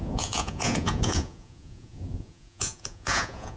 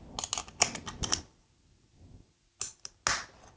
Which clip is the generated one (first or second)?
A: first